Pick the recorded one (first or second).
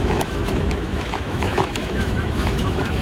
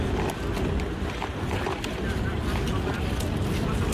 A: second